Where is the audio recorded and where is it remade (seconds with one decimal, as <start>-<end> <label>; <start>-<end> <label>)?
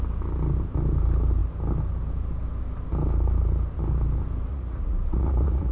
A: 0.0-4.5 recorded; 4.5-5.7 remade